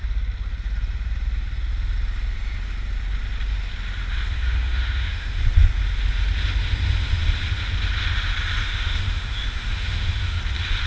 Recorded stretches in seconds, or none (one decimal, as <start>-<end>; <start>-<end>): 0.0-4.3; 5.4-8.6; 10.4-10.9